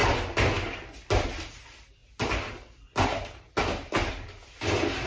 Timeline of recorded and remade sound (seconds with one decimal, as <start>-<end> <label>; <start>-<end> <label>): 0.0-5.1 recorded